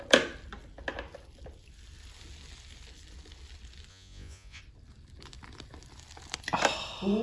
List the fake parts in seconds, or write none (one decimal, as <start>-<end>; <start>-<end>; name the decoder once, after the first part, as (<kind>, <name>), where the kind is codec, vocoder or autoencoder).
3.9-4.6 (vocoder, Vocos)